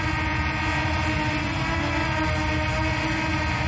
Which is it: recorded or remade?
recorded